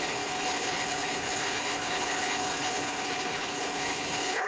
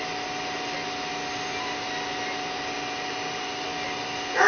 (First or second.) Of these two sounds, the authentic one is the second